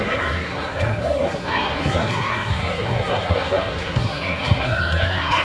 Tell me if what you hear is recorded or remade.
remade